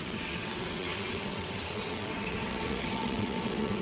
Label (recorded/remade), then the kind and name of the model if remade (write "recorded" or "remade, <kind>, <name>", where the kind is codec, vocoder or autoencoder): remade, vocoder, WaveNeXt